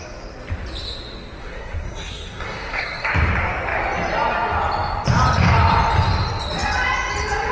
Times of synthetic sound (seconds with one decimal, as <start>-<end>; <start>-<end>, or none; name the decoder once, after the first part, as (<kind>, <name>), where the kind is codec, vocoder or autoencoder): 1.4-3.1 (codec, SNAC)

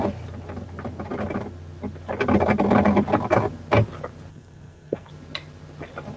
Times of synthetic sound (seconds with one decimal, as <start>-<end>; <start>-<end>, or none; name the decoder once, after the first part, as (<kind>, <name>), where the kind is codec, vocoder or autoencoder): 4.3-5.1 (codec, SNAC)

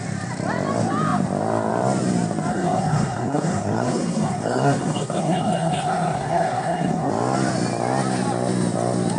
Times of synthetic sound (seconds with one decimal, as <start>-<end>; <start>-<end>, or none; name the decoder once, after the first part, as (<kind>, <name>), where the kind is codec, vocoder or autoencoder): 2.5-7.1 (codec, SNAC)

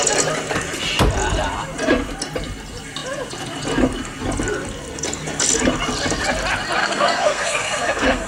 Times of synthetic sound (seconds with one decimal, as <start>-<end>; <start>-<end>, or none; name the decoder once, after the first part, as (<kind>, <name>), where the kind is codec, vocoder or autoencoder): 6.8-8.3 (codec, SNAC)

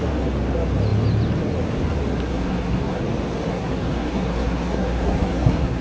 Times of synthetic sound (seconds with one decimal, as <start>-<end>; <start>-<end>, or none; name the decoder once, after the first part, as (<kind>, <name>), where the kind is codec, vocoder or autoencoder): 2.3-3.0 (codec, SNAC); 3.5-5.8

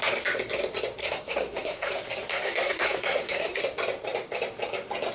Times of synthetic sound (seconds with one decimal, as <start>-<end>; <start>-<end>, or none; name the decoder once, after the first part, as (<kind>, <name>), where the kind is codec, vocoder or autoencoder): 1.0-1.9 (codec, SNAC); 2.3-3.6

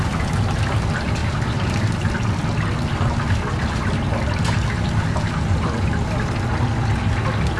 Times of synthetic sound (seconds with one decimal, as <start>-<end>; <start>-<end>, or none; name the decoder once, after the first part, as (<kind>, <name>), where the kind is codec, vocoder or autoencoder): none